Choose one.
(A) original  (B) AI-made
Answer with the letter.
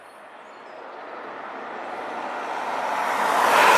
A